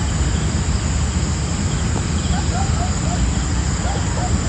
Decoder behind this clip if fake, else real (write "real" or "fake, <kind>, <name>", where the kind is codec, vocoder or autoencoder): real